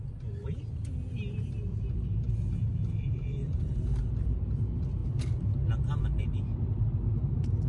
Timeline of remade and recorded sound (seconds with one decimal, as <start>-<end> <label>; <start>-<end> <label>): 0.0-1.7 recorded; 1.7-2.3 remade; 2.3-3.4 recorded; 3.4-4.1 remade; 4.1-7.7 recorded